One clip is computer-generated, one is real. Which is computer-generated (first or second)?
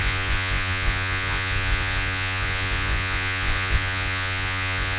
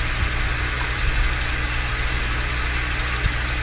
first